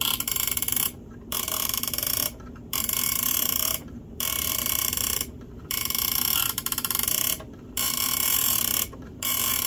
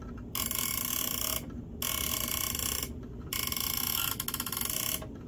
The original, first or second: second